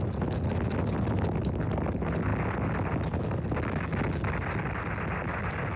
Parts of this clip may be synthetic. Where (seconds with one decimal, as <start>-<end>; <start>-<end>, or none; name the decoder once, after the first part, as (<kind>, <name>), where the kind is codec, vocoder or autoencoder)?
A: none